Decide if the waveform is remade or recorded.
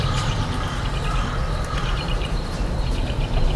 remade